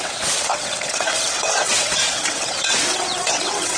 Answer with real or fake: fake